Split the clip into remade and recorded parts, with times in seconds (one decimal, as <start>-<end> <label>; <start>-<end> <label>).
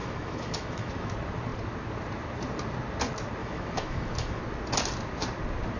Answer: 0.0-1.1 remade; 1.1-3.4 recorded; 3.4-4.4 remade; 4.4-5.8 recorded